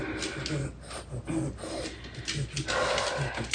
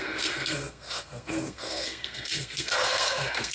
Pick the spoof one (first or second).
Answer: second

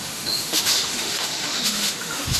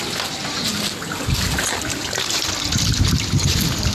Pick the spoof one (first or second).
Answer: first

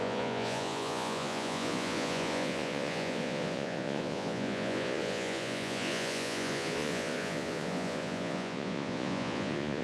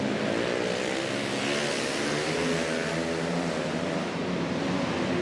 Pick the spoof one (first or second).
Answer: first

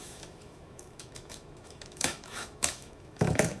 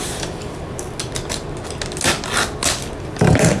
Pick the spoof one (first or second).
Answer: first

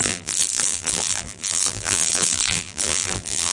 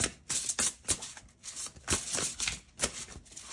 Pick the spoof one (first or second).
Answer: first